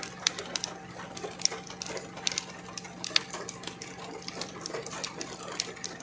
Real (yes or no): yes